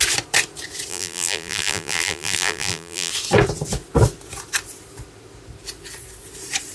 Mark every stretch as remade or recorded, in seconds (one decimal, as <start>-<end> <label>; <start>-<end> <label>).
0.0-0.9 recorded; 0.9-3.1 remade; 3.1-6.7 recorded